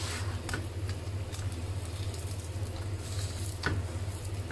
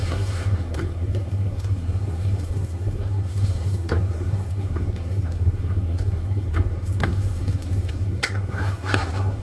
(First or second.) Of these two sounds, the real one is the first